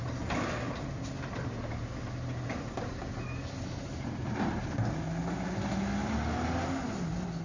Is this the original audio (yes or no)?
yes